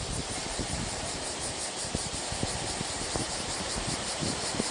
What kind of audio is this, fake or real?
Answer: fake